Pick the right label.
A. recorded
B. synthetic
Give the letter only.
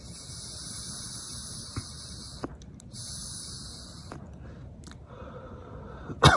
A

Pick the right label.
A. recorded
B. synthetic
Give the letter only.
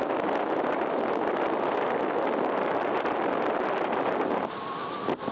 A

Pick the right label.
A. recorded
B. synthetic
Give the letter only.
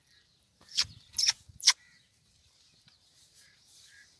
B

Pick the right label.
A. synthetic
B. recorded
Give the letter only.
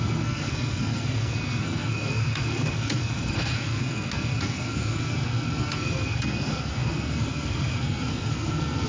A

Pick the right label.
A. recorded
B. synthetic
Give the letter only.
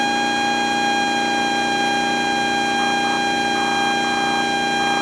A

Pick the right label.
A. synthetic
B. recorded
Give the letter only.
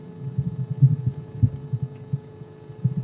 A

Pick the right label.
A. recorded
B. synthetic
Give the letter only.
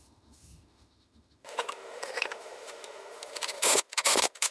B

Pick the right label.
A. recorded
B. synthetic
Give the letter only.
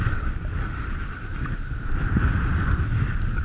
A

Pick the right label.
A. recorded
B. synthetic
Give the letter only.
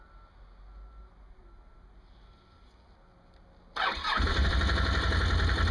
A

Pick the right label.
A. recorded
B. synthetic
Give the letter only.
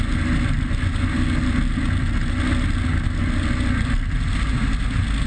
A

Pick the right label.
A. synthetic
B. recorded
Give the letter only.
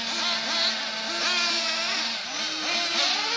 B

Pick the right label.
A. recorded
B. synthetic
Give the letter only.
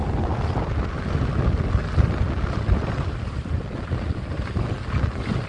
A